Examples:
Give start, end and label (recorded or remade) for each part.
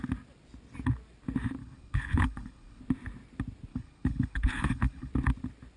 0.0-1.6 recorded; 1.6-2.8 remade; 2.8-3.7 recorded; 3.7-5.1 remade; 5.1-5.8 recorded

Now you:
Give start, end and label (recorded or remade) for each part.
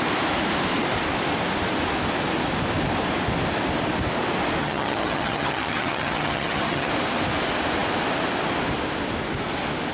0.0-4.6 recorded; 4.6-6.9 remade; 6.9-9.9 recorded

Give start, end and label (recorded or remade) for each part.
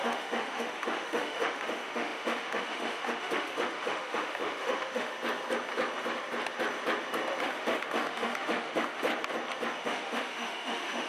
0.0-5.1 remade; 5.1-7.4 recorded; 7.4-9.1 remade; 9.1-9.8 recorded; 9.8-11.1 remade